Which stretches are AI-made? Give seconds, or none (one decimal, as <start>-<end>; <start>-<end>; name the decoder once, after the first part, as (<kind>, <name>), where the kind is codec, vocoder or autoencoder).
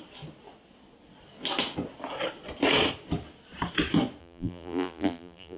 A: 4.2-5.6 (vocoder, BigVGAN v2)